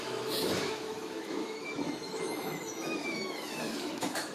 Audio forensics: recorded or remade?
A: remade